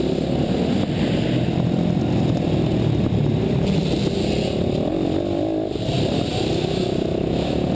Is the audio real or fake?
real